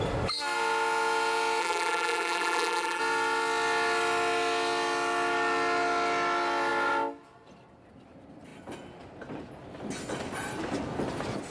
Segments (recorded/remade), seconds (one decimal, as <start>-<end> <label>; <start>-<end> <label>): 0.0-1.6 recorded; 1.6-3.0 remade; 3.0-11.5 recorded